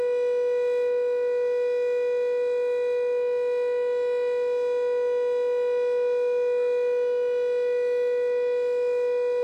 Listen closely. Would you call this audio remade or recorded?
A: recorded